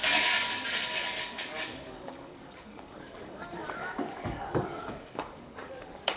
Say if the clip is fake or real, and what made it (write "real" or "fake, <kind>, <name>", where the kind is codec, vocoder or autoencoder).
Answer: fake, codec, DAC